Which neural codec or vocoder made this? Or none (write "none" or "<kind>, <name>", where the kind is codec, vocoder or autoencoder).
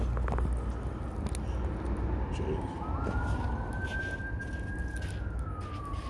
none